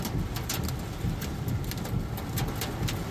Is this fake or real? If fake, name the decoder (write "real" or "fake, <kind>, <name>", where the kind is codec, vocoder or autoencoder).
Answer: real